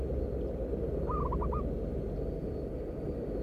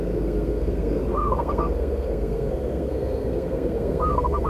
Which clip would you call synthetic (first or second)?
second